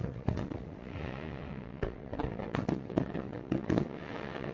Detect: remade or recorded remade